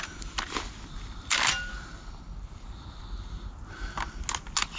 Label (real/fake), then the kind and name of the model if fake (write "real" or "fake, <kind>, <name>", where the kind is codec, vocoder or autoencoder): real